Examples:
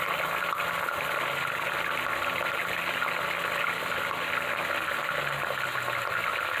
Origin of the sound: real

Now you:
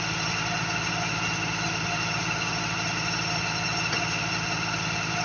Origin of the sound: real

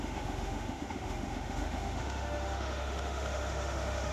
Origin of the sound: fake